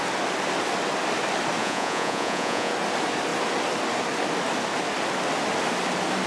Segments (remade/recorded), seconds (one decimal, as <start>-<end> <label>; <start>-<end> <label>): 0.0-1.6 recorded; 1.6-2.7 remade; 2.7-6.3 recorded

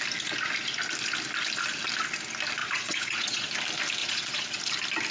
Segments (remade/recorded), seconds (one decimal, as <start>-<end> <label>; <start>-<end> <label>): 0.0-2.6 recorded; 2.6-3.5 remade; 3.5-4.0 recorded; 4.0-4.6 remade; 4.6-5.1 recorded